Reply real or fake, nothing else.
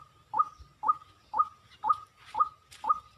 real